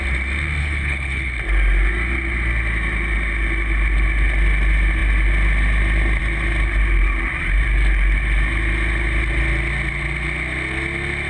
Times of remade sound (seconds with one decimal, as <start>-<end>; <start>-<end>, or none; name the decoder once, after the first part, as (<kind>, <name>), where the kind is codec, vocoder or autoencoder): 0.6-1.3 (codec, HILCodec)